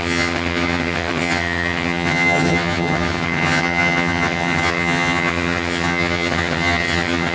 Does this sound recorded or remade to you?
remade